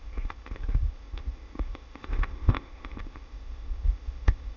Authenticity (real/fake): fake